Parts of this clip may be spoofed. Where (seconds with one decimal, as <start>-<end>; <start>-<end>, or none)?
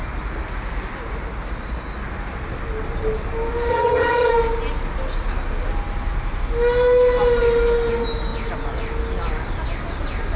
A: 3.7-4.3